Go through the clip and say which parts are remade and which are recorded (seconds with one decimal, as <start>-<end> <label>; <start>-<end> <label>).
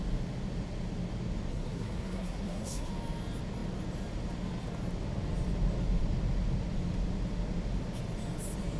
0.0-1.5 recorded; 1.5-2.9 remade; 2.9-8.8 recorded